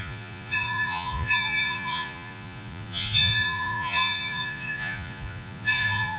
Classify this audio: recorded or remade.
remade